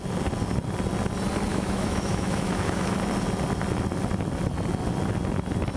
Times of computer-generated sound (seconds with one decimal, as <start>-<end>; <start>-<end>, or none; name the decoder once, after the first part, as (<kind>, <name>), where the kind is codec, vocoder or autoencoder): 1.5-2.9 (autoencoder, DAC-VAE)